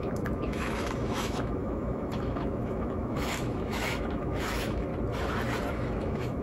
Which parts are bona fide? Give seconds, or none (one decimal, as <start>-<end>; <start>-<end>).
4.9-5.7